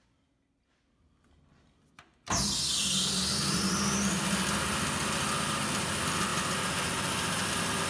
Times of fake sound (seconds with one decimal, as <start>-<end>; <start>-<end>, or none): none